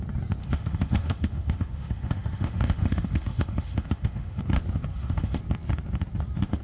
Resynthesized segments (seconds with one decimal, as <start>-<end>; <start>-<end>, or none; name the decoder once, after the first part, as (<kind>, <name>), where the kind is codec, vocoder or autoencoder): 0.4-4.4 (autoencoder, DAC-VAE); 4.9-5.4